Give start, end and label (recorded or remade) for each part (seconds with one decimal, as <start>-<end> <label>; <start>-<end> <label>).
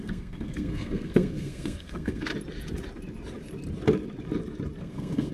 0.0-2.3 remade; 2.3-4.8 recorded; 4.8-5.3 remade